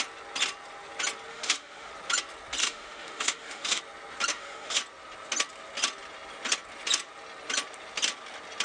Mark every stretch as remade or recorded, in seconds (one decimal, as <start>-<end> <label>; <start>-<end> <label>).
0.0-1.3 recorded; 1.3-1.9 remade; 1.9-2.6 recorded; 2.6-3.8 remade; 3.8-4.3 recorded; 4.3-4.8 remade; 4.8-8.6 recorded